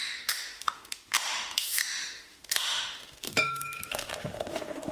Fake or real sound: fake